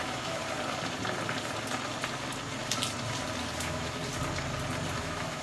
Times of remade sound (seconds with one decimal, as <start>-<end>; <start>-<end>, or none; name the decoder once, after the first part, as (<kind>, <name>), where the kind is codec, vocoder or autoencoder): 0.0-0.4 (autoencoder, DAC-VAE); 3.6-4.0; 5.0-5.4